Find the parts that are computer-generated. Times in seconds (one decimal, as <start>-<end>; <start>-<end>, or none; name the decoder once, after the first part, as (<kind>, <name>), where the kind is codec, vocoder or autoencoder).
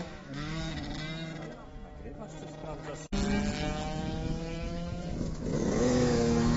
0.0-0.8 (autoencoder, DAC-VAE); 3.5-6.6